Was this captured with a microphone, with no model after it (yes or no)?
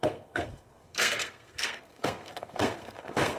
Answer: no